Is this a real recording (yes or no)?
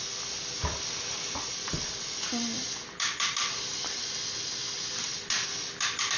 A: yes